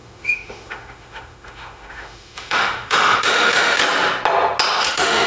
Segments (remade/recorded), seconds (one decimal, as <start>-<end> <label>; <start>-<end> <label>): 0.0-3.8 remade; 3.8-4.8 recorded; 4.8-5.3 remade

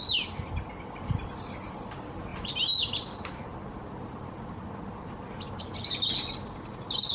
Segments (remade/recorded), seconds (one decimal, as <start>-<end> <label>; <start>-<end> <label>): 0.0-7.1 recorded

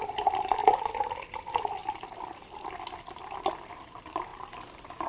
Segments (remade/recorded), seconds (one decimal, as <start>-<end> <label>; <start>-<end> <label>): 0.0-5.1 recorded

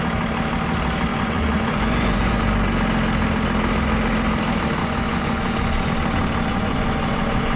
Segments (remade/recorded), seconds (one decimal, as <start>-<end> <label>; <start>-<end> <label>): 0.0-1.1 recorded; 1.1-2.4 remade; 2.4-4.8 recorded; 4.8-5.9 remade; 5.9-6.5 recorded; 6.5-7.6 remade

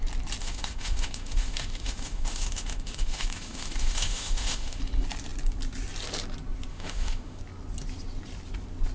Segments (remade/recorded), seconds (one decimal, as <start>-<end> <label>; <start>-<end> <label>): 0.0-0.4 recorded; 0.4-4.8 remade; 4.8-6.7 recorded; 6.7-7.4 remade; 7.4-8.9 recorded